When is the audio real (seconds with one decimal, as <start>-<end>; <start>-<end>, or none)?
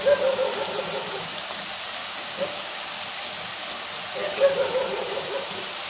0.0-2.0; 3.0-5.9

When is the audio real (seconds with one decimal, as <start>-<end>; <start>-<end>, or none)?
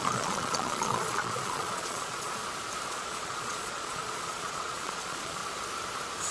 2.4-2.9; 5.4-6.3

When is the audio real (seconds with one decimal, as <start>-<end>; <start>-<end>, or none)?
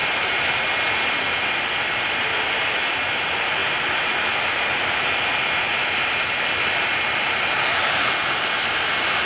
0.5-9.3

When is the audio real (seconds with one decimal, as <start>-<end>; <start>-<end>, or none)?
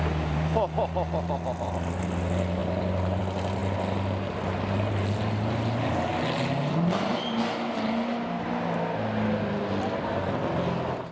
0.0-11.1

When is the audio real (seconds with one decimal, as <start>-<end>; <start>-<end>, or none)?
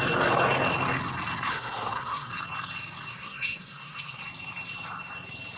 0.0-1.5; 2.3-3.1; 4.2-5.6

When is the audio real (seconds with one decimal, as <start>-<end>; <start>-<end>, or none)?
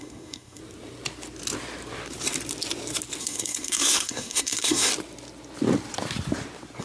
0.6-3.2; 4.9-6.8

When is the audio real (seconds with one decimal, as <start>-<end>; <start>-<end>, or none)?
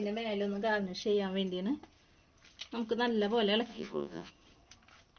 0.0-3.7; 4.3-5.2